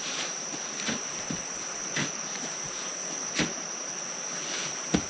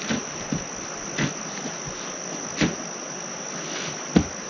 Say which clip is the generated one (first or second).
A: first